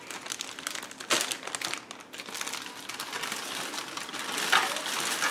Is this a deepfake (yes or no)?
no